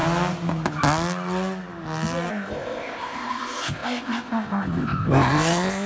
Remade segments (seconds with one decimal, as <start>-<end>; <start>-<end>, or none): 2.3-5.9